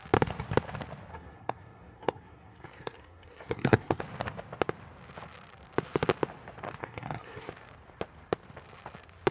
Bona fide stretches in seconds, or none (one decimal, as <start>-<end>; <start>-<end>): 0.0-1.1; 4.0-6.8; 7.5-9.3